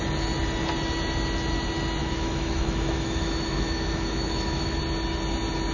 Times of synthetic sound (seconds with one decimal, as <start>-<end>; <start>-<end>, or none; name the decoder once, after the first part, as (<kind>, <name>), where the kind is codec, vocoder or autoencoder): 2.0-4.8 (autoencoder, DAC-VAE)